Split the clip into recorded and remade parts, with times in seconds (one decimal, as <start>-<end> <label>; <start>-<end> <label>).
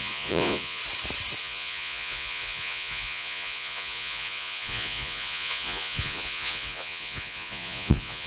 0.0-0.8 remade; 0.8-1.4 recorded; 1.4-8.3 remade